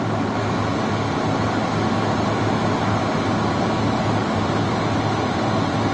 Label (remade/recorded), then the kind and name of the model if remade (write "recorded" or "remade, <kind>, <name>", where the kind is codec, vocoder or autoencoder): recorded